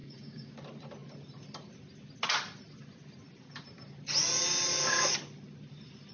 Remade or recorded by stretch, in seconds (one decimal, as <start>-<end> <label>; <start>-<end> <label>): 0.0-0.5 remade; 0.5-6.1 recorded